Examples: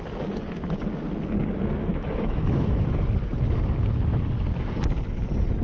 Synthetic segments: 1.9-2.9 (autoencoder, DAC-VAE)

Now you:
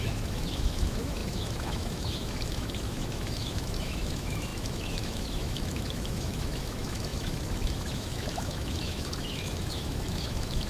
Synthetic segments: 0.0-10.7 (autoencoder, DAC-VAE)